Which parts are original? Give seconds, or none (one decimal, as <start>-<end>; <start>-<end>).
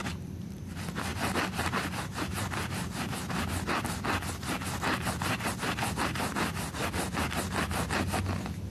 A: 0.0-1.1; 3.5-8.7